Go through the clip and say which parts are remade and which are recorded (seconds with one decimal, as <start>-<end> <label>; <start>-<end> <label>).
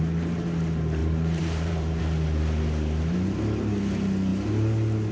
0.0-1.0 recorded; 1.0-2.0 remade; 2.0-5.1 recorded